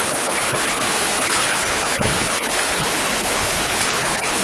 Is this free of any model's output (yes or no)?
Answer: no